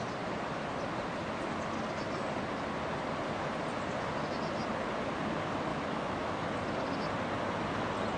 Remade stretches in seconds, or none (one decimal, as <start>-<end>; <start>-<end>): 5.7-6.5